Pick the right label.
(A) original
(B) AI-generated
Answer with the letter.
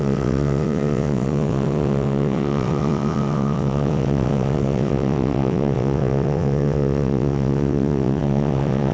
B